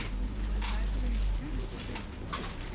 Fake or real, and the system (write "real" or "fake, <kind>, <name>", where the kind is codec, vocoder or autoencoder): real